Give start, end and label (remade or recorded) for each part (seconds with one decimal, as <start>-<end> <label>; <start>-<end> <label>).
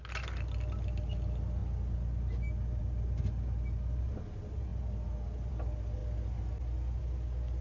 0.0-7.6 recorded